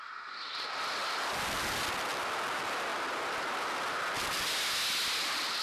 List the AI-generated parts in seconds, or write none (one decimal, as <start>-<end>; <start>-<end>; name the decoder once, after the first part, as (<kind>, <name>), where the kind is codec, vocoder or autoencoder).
none